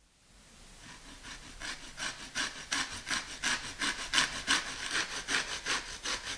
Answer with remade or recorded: recorded